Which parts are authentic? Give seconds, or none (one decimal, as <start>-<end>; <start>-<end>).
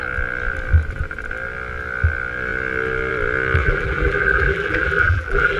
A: 0.0-3.6